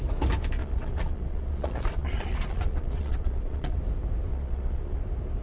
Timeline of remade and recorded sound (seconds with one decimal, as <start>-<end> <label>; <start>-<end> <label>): 0.0-0.6 recorded; 0.6-3.8 remade; 3.8-4.3 recorded; 4.3-5.0 remade; 5.0-5.4 recorded